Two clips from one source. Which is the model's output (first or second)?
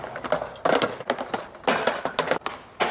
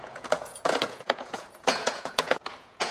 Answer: second